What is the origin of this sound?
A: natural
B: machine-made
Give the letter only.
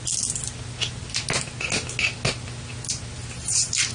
A